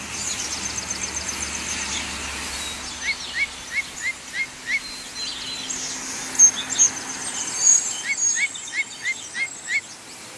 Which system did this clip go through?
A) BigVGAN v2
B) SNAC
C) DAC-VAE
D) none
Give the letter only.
D